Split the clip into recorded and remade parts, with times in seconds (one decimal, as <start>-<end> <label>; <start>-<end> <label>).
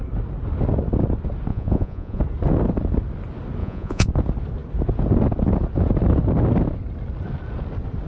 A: 0.0-1.5 recorded; 1.5-2.2 remade; 2.2-3.6 recorded; 3.6-4.1 remade; 4.1-8.1 recorded